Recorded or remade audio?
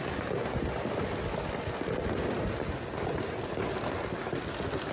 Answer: recorded